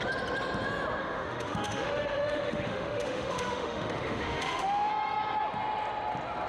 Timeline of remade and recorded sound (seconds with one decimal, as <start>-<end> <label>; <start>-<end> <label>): 0.0-1.0 recorded; 1.0-4.9 remade; 4.9-6.5 recorded